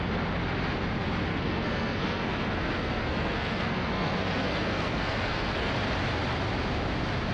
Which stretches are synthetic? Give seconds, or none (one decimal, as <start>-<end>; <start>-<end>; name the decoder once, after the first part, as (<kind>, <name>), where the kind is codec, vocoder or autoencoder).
1.3-5.7 (codec, SNAC)